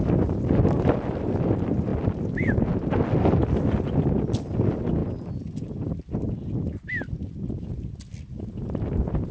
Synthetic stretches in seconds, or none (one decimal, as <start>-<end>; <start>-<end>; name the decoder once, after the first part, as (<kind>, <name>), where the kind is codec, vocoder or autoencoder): none